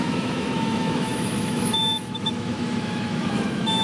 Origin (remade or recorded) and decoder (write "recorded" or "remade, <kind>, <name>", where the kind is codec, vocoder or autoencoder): remade, autoencoder, DAC-VAE